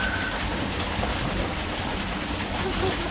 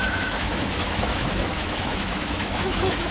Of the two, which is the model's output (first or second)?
second